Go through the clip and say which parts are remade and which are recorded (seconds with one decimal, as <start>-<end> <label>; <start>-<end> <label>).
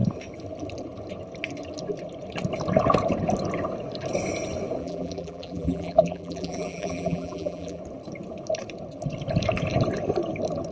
0.0-4.8 recorded; 4.8-7.8 remade; 7.8-10.7 recorded